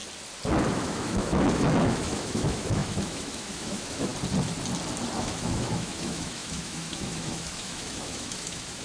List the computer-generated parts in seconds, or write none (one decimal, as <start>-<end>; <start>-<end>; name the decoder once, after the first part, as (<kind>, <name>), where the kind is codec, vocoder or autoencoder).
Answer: 0.7-4.1 (autoencoder, DAC-VAE); 5.2-8.8